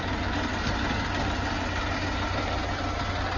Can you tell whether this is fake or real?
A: real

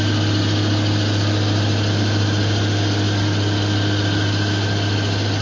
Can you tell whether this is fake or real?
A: real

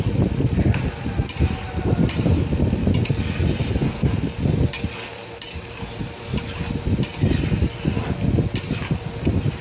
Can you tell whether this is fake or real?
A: real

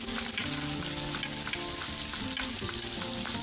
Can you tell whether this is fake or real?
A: real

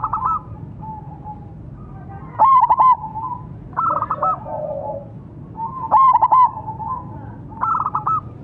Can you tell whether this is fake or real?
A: real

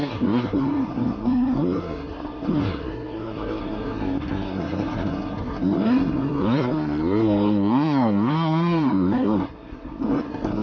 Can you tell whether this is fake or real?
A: fake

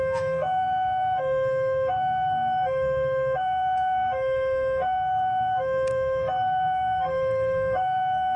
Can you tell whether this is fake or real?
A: fake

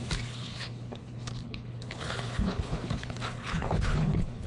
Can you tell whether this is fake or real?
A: fake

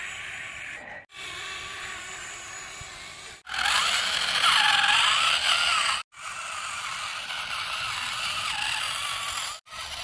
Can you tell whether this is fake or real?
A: real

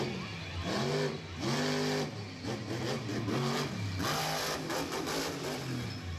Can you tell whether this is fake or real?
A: real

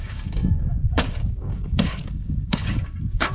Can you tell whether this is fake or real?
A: fake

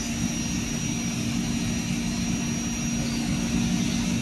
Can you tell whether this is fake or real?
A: real